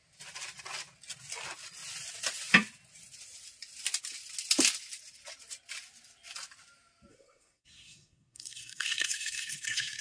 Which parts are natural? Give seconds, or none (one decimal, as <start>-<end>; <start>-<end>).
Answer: 0.0-7.1